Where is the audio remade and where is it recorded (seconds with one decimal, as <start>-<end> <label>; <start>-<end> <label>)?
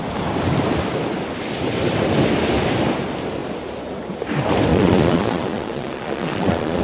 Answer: 0.0-4.7 recorded; 4.7-6.8 remade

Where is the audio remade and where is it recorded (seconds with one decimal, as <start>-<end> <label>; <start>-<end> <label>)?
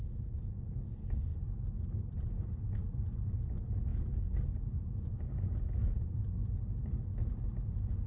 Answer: 0.0-8.1 recorded